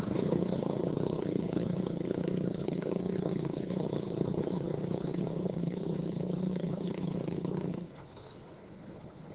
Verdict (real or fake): fake